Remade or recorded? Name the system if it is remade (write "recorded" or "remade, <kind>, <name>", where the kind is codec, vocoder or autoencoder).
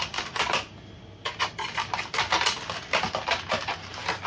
recorded